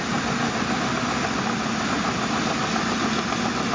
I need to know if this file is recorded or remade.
recorded